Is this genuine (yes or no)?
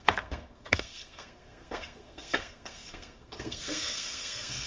no